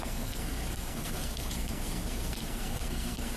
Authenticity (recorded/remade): remade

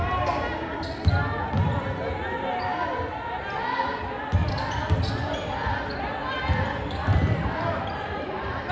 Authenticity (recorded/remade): recorded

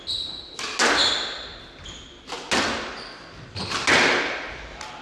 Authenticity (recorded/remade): recorded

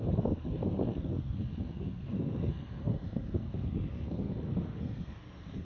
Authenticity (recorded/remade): remade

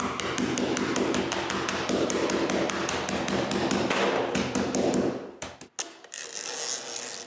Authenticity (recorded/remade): recorded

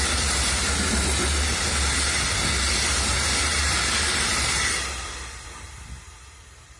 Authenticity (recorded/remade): recorded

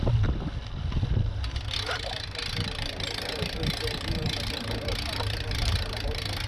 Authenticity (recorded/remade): recorded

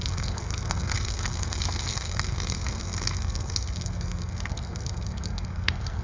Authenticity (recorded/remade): remade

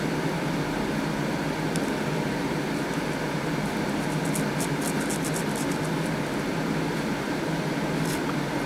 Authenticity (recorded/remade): recorded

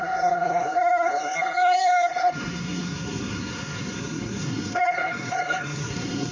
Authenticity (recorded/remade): remade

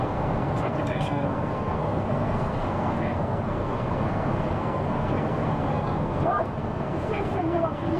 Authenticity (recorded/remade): remade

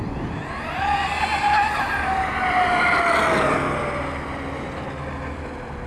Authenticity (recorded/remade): recorded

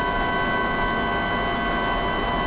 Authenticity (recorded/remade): recorded